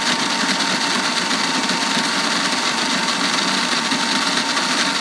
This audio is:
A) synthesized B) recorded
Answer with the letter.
B